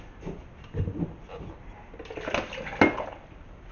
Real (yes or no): yes